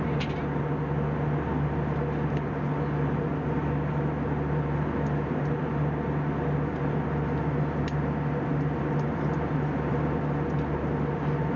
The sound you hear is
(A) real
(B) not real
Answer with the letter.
A